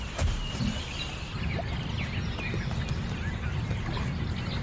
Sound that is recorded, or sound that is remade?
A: recorded